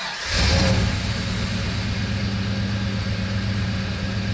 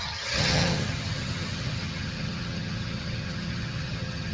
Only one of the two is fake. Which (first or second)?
second